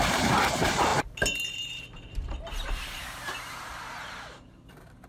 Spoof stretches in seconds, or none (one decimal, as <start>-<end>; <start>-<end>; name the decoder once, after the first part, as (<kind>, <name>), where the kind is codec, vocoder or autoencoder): 0.0-5.1 (vocoder, BigVGAN v2)